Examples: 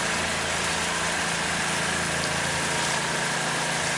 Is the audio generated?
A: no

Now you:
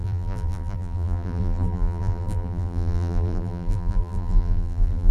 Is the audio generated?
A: yes